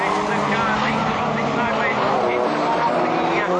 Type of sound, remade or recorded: recorded